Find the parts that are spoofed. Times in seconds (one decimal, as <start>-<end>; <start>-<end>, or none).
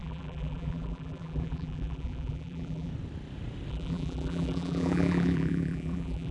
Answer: 0.0-2.9; 3.7-6.3